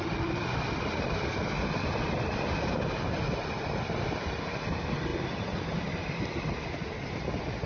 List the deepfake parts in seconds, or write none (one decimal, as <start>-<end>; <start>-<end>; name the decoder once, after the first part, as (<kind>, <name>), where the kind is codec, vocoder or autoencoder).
none